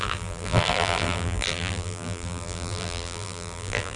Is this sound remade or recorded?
remade